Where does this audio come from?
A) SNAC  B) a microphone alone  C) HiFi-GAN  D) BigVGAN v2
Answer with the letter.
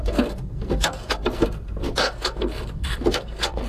A